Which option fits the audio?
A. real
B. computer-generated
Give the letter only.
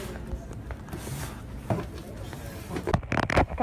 A